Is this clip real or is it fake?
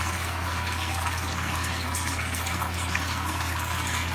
fake